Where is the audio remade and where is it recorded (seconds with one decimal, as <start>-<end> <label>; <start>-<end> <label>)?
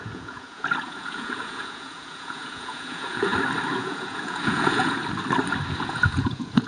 0.0-3.3 remade; 3.3-3.8 recorded; 3.8-5.0 remade; 5.0-5.7 recorded; 5.7-6.7 remade